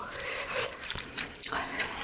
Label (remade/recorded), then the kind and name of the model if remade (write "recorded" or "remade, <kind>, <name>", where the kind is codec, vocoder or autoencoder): recorded